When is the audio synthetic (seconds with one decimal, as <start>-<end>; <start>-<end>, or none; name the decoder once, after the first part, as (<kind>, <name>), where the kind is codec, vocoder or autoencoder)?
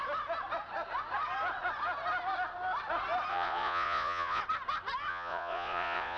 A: 3.3-4.4 (vocoder, Vocos); 5.1-6.2